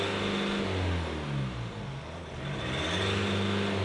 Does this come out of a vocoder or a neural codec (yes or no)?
no